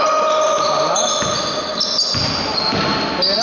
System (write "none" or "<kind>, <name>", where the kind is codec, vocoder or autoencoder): none